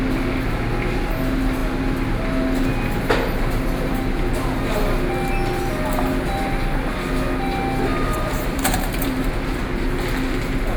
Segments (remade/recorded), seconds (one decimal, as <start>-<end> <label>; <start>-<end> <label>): 0.0-7.9 recorded; 7.9-9.3 remade; 9.3-10.8 recorded